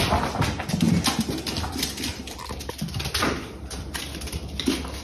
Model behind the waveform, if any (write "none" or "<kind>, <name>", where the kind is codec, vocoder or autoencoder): none